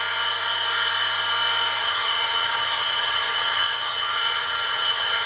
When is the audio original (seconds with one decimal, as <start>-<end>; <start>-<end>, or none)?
0.0-1.8